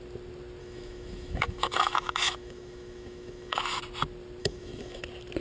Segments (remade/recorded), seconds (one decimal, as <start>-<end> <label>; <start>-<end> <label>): 0.0-0.6 recorded; 0.6-3.8 remade; 3.8-4.4 recorded; 4.4-5.0 remade; 5.0-5.4 recorded